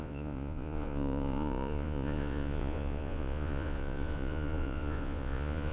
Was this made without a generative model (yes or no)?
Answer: no